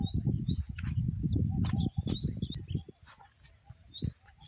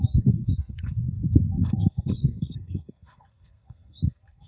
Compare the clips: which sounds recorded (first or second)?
first